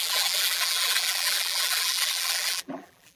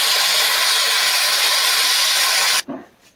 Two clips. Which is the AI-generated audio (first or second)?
first